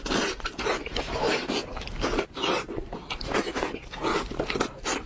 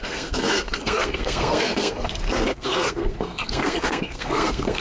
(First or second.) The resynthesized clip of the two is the second